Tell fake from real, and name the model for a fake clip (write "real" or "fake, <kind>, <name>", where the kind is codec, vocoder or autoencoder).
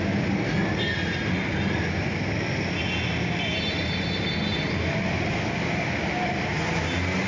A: real